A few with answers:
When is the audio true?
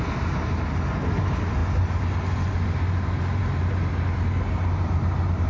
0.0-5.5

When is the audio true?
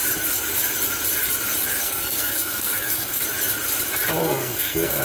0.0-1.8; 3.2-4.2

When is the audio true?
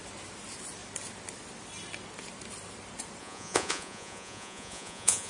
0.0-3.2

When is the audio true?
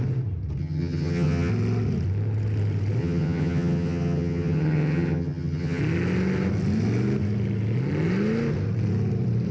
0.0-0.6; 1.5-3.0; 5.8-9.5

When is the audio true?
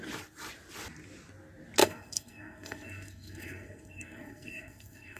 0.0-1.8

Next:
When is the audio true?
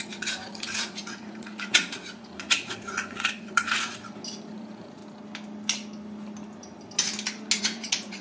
4.0-4.5; 5.0-7.6